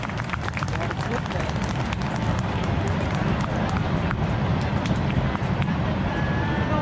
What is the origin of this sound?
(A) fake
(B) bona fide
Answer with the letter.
A